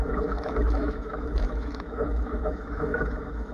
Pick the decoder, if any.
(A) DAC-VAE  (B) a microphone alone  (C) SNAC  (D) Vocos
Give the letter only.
A